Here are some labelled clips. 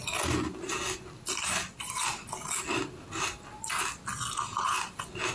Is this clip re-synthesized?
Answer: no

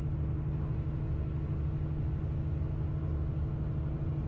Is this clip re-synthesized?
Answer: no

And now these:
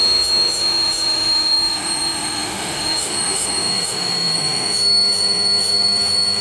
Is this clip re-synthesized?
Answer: yes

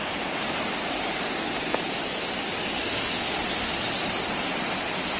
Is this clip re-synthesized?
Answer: no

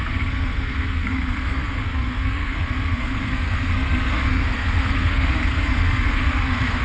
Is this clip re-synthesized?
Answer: yes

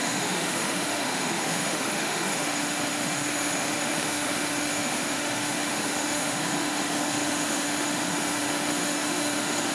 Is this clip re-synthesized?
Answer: yes